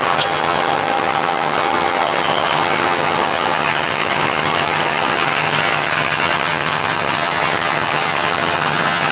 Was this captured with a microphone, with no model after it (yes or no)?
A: no